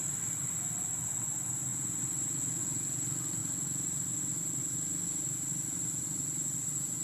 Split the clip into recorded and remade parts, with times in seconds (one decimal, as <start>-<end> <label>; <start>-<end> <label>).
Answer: 0.0-7.0 recorded